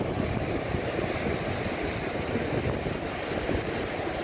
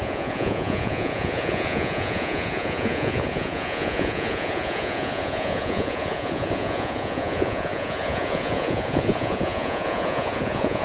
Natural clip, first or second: first